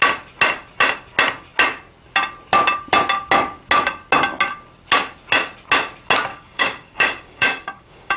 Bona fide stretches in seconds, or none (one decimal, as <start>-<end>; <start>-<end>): 0.0-6.3